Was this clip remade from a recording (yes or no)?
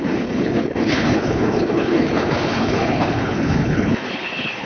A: yes